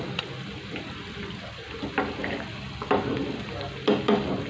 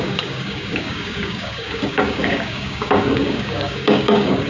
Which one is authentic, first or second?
first